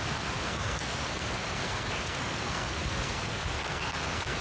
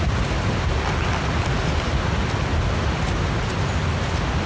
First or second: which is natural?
second